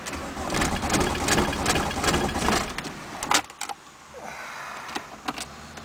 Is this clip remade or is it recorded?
recorded